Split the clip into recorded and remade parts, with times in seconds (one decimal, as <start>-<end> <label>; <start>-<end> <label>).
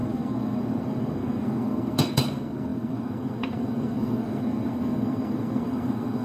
0.0-6.2 remade